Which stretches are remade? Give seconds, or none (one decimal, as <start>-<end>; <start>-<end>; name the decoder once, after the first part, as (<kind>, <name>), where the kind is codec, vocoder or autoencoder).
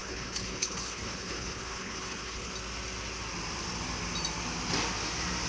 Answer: 0.0-2.5 (codec, HILCodec)